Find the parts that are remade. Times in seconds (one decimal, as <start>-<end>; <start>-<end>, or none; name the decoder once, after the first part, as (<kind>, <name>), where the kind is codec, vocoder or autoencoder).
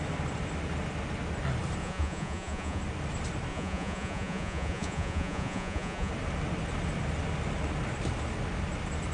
1.8-2.8 (vocoder, Vocos); 3.5-6.1